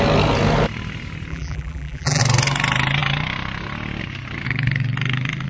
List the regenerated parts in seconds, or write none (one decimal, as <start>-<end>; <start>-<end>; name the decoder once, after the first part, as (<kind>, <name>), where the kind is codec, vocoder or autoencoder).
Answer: 1.3-2.2 (vocoder, BigVGAN v2)